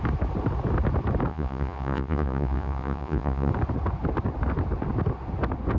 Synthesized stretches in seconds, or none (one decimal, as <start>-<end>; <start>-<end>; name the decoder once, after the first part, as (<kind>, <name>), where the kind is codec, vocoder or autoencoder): 1.3-3.5 (vocoder, Vocos)